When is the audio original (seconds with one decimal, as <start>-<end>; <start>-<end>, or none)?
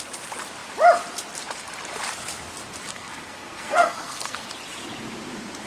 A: 0.0-2.9; 4.5-5.7